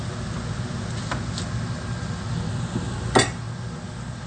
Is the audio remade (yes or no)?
no